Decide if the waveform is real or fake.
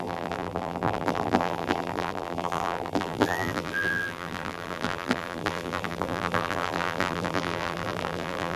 fake